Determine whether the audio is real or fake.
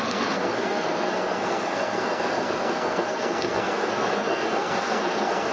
fake